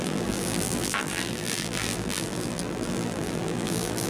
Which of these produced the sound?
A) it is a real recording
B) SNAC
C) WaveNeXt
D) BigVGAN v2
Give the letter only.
D